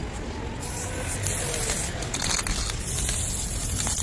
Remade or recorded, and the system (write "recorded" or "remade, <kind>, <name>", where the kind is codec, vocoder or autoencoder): recorded